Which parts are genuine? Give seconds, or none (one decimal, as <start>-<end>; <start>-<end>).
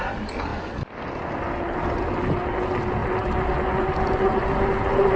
0.0-5.2